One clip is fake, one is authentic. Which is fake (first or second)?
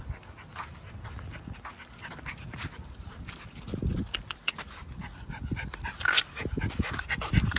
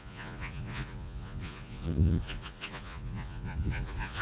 second